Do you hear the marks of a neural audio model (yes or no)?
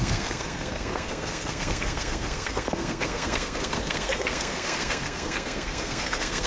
yes